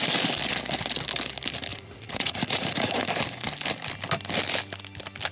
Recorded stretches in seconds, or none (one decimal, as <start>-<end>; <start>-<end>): 0.0-1.7; 3.0-5.3